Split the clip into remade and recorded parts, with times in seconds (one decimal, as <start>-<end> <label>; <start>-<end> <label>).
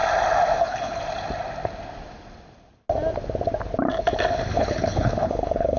0.0-0.6 recorded; 0.6-1.0 remade; 1.0-4.5 recorded; 4.5-5.8 remade